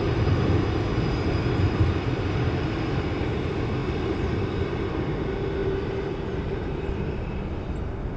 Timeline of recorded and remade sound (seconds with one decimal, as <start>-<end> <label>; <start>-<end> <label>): 0.0-3.8 recorded; 3.8-4.9 remade; 4.9-5.6 recorded; 5.6-6.9 remade; 6.9-8.2 recorded